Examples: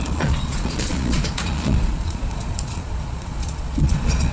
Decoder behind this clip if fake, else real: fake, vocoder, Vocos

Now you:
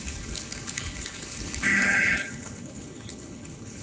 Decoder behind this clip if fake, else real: fake, codec, HILCodec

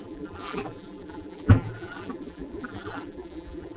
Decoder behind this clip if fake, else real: fake, vocoder, BigVGAN v2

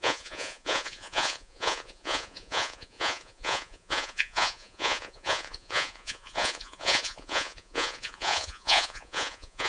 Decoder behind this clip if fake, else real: fake, vocoder, Vocos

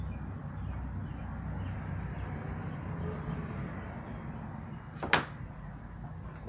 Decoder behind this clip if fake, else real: real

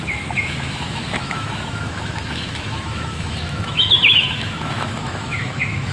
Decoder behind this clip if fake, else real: fake, autoencoder, DAC-VAE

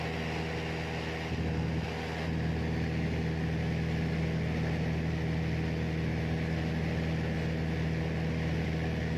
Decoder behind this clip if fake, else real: real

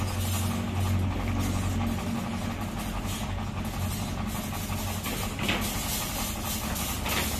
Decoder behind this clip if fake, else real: real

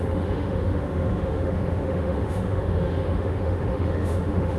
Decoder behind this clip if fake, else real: fake, autoencoder, DAC-VAE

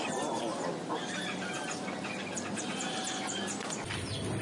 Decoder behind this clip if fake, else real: real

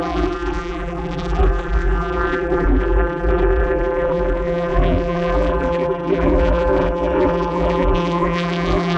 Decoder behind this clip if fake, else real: fake, vocoder, BigVGAN v2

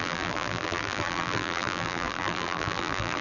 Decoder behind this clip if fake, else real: fake, vocoder, BigVGAN v2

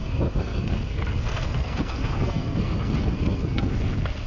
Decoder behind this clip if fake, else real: fake, codec, SNAC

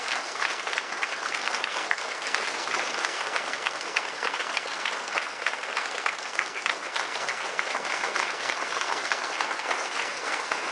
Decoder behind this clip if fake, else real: fake, codec, SNAC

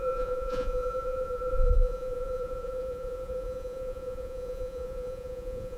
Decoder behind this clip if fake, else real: fake, vocoder, Vocos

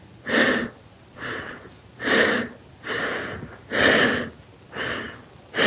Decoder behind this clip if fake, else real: real